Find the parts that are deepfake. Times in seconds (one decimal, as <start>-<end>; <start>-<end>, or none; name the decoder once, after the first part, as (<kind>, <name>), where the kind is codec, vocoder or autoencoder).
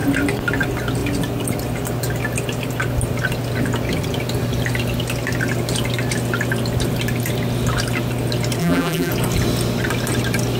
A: 8.6-9.1 (vocoder, BigVGAN v2)